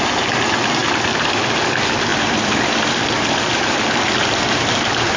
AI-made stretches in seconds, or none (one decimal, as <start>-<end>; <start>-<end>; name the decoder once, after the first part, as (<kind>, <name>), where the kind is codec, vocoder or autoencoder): 2.1-4.3 (vocoder, BigVGAN v2)